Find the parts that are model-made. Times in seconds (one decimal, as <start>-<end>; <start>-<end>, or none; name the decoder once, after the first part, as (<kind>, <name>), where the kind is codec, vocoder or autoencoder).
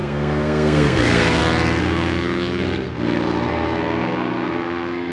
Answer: 0.0-1.4 (codec, SNAC); 1.8-5.1